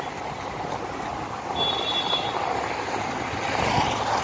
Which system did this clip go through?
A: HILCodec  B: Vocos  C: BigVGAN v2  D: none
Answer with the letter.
D